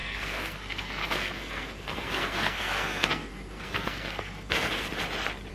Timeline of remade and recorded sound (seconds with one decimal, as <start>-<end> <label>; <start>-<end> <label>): 0.0-4.9 remade; 4.9-5.5 recorded